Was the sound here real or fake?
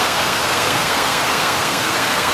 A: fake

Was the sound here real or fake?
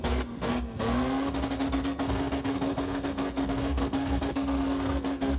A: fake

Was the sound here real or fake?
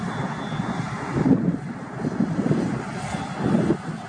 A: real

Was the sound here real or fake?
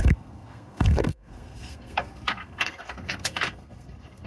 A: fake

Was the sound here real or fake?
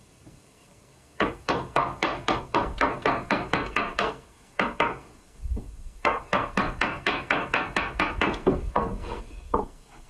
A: fake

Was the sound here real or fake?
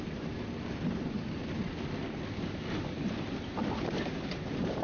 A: real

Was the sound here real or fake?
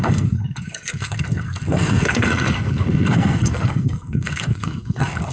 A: fake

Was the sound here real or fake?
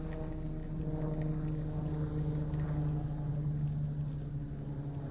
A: real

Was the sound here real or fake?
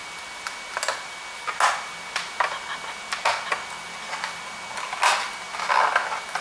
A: real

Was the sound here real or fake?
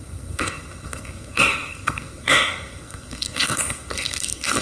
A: fake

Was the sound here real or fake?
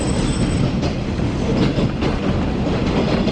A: real